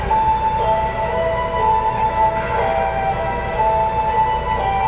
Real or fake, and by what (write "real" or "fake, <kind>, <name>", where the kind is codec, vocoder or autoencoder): real